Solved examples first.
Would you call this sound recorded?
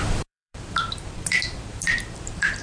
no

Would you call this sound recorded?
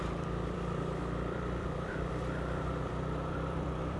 no